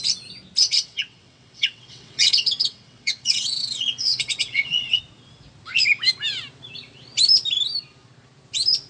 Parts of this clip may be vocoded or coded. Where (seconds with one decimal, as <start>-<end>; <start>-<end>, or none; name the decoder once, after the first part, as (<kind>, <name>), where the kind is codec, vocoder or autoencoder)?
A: 0.6-5.0 (vocoder, WaveNeXt)

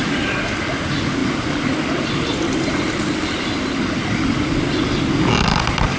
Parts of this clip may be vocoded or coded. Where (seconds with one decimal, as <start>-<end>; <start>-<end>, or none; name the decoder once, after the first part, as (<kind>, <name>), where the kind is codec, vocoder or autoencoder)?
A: none

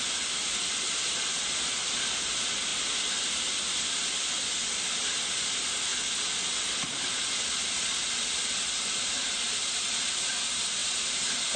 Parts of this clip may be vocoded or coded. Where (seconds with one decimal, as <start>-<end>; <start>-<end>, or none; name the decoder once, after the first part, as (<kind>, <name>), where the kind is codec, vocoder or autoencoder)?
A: none

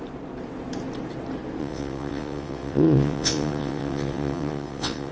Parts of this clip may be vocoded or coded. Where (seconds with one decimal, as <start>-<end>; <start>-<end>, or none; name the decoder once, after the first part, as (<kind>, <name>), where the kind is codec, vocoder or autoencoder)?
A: 1.6-5.1 (vocoder, WaveNeXt)

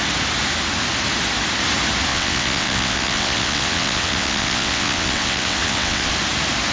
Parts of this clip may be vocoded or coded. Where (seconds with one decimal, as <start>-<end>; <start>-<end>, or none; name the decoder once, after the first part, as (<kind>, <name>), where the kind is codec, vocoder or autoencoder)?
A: 2.1-6.1 (vocoder, WaveNeXt)

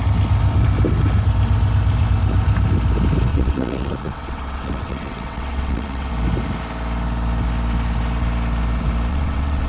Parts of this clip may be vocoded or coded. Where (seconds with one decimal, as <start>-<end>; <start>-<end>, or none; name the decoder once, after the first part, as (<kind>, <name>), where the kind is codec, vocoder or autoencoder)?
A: 3.3-6.1 (vocoder, WaveNeXt); 9.1-9.7